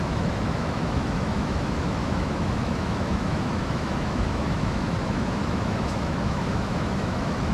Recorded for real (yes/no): no